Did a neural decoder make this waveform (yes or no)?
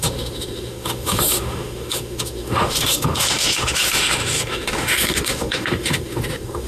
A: yes